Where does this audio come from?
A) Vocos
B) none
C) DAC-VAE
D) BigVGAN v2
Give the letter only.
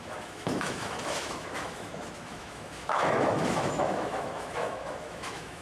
C